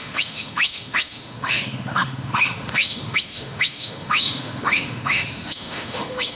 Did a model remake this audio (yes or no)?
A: yes